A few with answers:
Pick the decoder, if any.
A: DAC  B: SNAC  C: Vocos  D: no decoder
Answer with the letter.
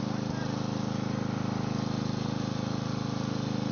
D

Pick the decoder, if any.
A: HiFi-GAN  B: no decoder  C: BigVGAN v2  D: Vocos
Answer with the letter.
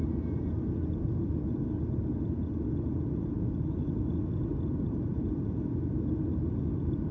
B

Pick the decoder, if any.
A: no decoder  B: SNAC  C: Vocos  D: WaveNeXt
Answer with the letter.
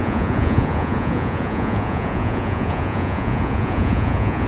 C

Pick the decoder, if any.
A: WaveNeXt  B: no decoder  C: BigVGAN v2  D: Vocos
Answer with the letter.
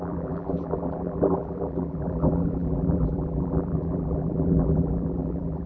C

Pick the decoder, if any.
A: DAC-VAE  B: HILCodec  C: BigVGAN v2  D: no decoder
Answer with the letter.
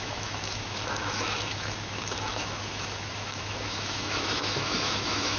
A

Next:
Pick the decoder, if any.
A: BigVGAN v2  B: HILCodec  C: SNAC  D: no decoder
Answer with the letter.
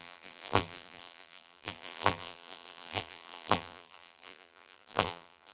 A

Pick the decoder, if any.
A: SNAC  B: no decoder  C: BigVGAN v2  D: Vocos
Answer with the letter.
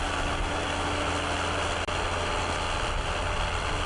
B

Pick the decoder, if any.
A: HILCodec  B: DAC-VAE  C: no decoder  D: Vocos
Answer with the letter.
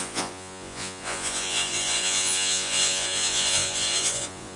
D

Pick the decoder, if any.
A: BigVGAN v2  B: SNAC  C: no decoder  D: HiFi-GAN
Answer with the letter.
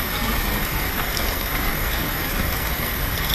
B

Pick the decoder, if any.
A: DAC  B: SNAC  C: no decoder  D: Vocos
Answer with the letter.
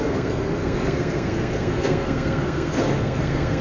B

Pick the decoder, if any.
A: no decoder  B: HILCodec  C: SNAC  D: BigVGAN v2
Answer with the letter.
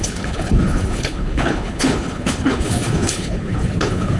B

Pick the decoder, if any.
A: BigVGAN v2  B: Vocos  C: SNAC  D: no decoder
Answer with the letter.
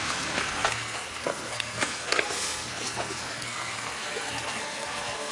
C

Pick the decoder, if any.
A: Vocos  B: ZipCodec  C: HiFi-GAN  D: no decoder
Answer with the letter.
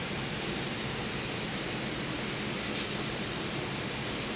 D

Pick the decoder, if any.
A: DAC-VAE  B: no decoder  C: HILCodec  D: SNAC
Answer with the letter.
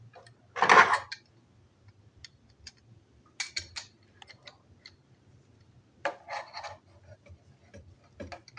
B